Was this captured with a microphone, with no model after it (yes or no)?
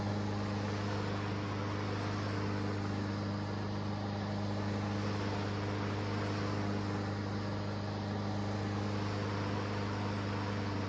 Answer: yes